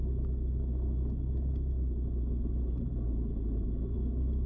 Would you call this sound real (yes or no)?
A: yes